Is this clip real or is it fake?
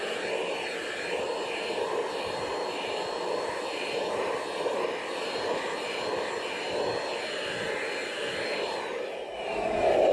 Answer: real